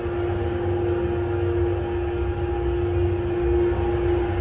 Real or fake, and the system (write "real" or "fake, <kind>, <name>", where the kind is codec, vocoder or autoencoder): real